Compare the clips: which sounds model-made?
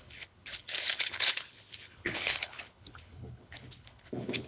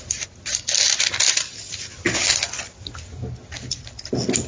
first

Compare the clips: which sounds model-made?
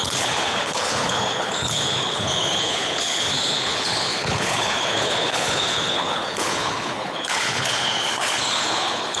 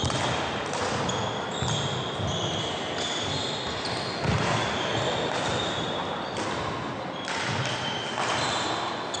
first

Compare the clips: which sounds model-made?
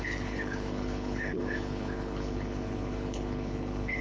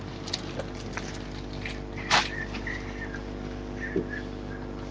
first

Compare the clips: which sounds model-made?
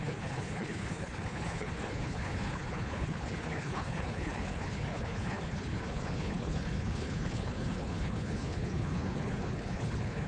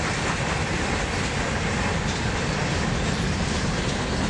first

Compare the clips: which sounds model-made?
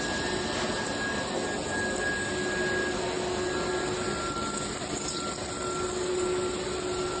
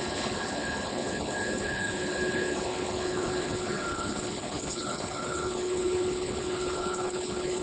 second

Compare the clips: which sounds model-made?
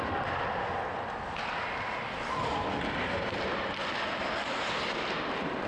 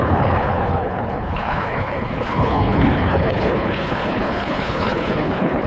second